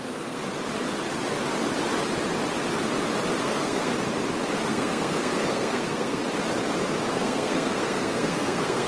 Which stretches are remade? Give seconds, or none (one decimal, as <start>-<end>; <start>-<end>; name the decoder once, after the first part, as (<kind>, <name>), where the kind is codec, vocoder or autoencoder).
0.0-0.4 (codec, SNAC); 3.4-3.9; 4.7-6.2; 7.1-8.9